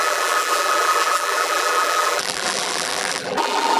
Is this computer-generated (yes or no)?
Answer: yes